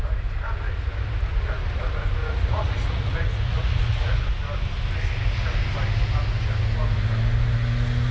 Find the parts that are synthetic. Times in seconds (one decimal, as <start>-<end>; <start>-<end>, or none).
2.2-4.2